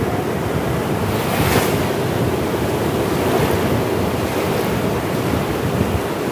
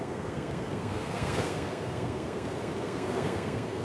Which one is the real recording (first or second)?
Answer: first